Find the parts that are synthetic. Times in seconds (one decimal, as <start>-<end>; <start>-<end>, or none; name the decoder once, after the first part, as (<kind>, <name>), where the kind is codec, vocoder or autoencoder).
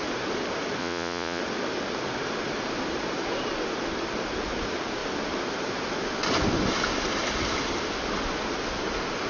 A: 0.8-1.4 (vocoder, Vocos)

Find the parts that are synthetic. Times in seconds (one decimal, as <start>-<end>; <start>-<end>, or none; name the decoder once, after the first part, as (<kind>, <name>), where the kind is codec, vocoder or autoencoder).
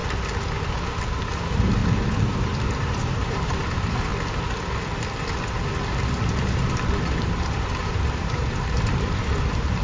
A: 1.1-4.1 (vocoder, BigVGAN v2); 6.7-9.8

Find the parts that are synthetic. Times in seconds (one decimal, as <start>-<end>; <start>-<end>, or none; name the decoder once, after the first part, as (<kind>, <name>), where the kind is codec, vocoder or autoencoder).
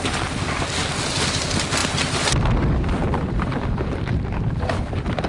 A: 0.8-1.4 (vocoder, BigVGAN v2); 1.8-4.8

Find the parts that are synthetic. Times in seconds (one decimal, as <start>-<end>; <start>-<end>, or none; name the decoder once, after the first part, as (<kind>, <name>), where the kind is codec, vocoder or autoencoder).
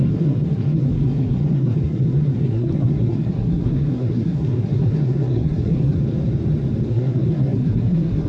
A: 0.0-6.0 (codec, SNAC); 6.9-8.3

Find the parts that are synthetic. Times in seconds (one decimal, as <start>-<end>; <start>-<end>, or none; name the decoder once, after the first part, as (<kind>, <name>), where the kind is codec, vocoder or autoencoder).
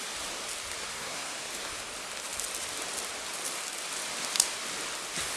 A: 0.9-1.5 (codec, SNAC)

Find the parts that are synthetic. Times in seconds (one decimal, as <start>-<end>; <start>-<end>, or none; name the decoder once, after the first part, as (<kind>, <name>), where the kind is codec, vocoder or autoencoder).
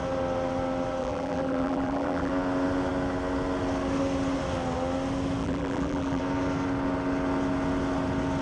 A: 1.0-2.3 (vocoder, BigVGAN v2); 5.4-6.2